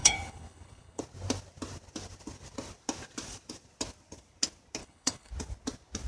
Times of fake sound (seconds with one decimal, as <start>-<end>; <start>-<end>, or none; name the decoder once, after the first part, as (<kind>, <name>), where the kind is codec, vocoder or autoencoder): 0.0-1.0 (codec, HILCodec); 4.8-5.3